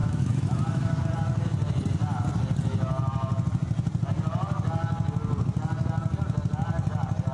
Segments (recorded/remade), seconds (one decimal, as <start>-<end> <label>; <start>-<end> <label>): 0.0-1.0 remade; 1.0-7.3 recorded